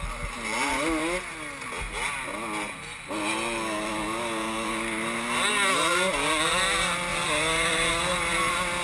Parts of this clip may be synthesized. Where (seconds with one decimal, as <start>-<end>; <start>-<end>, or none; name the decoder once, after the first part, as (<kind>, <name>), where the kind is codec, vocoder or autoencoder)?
none